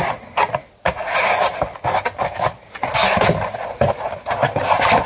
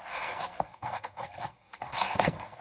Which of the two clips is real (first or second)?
first